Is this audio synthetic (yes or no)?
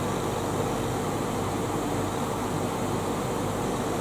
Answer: no